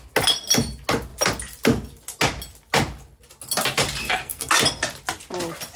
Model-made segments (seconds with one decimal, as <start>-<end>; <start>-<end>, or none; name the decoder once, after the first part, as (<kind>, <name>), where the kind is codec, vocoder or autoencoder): 4.0-4.5 (codec, SNAC)